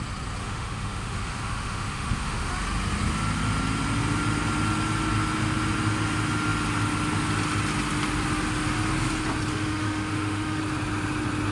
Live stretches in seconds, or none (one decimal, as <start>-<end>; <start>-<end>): 0.0-0.4; 2.5-9.5; 10.6-11.5